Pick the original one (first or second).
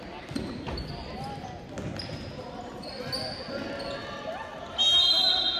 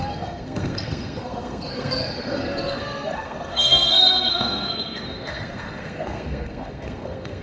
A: first